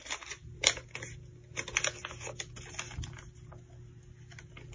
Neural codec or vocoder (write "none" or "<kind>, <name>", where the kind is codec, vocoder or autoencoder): none